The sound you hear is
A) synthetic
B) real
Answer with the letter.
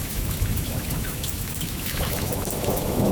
A